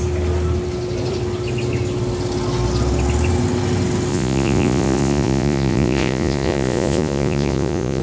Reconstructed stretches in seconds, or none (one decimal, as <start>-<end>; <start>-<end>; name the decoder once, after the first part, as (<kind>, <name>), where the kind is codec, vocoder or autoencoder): 4.1-8.0 (vocoder, Vocos)